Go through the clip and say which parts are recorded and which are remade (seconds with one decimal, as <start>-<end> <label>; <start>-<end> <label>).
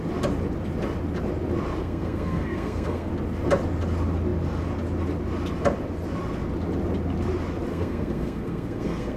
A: 0.0-1.8 recorded; 1.8-3.1 remade; 3.1-7.7 recorded; 7.7-9.2 remade